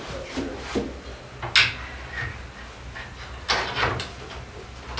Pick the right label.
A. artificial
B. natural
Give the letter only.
B